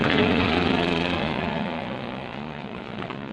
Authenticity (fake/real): fake